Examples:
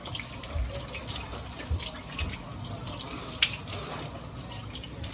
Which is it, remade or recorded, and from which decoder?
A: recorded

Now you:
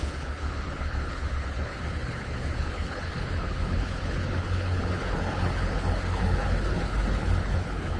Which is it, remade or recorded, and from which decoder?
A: remade, codec, HILCodec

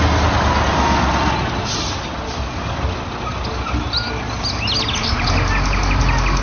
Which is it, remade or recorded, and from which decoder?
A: recorded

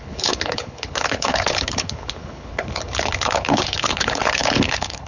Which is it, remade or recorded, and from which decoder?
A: remade, codec, HILCodec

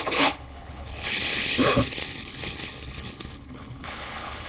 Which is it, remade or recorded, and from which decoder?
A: remade, codec, HILCodec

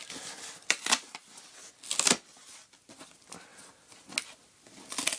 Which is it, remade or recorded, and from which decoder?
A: recorded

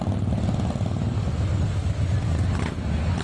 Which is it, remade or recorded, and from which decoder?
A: recorded